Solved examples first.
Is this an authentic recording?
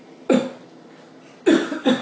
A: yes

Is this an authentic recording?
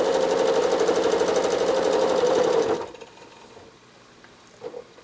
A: no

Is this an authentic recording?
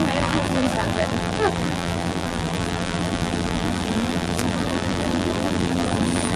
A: no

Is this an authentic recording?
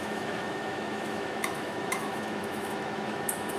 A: no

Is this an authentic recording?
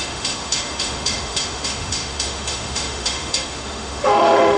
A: no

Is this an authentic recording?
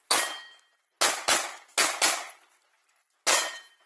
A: yes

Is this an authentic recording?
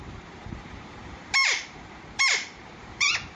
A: no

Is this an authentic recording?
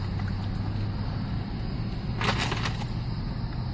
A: yes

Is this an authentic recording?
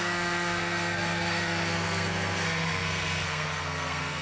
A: no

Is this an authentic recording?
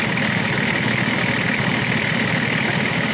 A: no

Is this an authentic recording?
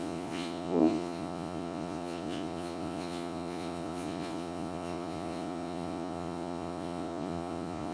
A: no